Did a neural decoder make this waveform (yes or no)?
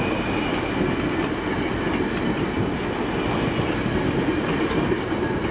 no